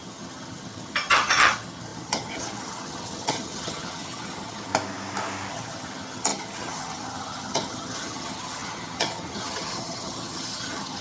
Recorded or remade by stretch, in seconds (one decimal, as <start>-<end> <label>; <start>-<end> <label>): 0.0-4.7 remade; 4.7-5.5 recorded; 5.5-11.0 remade